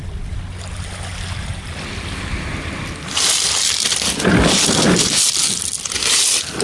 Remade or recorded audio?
recorded